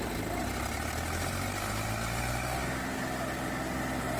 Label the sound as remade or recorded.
recorded